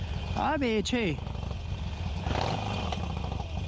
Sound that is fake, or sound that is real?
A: real